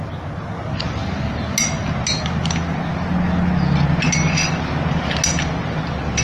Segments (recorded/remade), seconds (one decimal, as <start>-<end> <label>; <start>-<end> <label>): 0.0-6.2 recorded